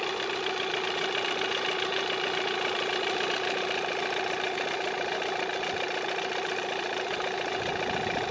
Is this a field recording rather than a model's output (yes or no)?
no